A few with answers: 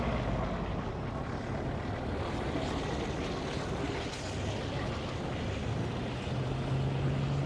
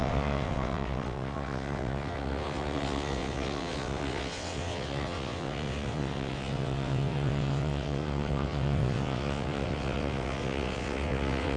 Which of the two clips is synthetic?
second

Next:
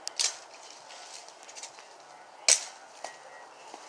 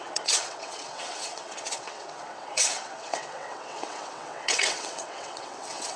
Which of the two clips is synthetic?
second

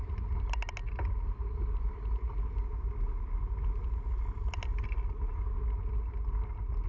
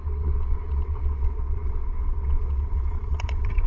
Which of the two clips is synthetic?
second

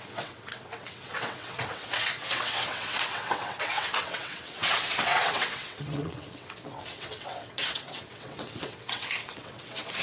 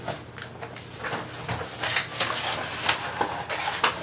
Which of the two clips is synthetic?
first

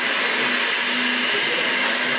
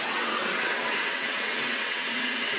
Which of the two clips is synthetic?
second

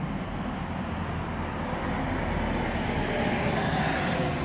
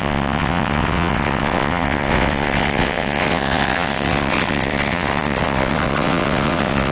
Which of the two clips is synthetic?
second